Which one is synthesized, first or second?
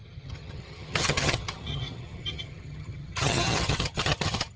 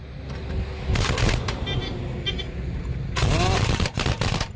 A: first